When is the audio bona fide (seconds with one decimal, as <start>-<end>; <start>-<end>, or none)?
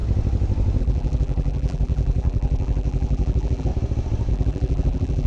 0.0-0.8; 3.7-4.3